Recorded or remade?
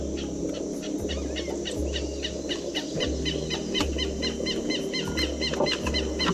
recorded